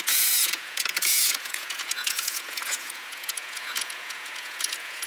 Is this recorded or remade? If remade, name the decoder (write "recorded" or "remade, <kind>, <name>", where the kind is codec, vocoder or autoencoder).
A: remade, vocoder, Vocos